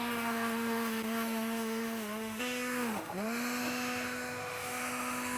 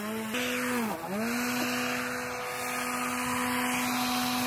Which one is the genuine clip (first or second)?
second